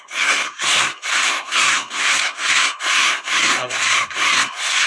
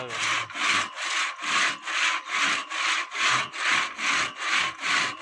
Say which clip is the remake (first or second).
first